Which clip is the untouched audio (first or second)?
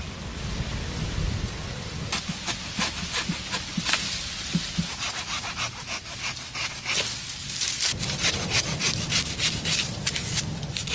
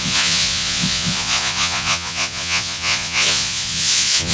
first